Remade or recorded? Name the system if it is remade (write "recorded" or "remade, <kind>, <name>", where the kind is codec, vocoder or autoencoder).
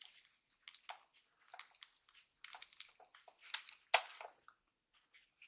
recorded